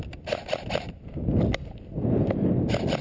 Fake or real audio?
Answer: real